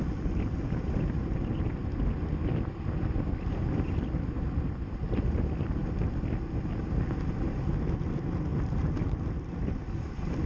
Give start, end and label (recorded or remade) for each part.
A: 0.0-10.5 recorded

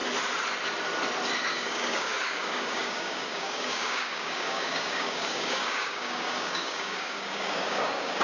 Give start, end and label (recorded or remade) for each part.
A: 0.0-1.5 recorded; 1.5-8.2 remade

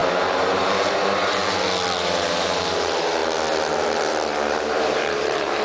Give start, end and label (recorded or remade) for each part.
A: 0.0-0.6 recorded; 0.6-1.4 remade; 1.4-2.0 recorded; 2.0-3.2 remade; 3.2-4.5 recorded; 4.5-5.6 remade